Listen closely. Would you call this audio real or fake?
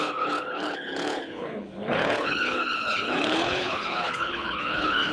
fake